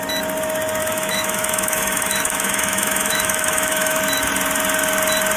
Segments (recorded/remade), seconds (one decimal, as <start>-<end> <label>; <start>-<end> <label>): 0.0-0.8 recorded; 0.8-4.0 remade; 4.0-5.4 recorded